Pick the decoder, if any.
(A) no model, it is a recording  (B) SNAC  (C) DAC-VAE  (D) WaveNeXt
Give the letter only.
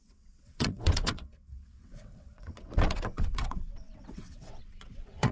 D